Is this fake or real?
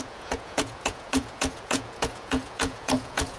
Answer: fake